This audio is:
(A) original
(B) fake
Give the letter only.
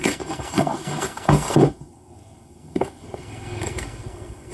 B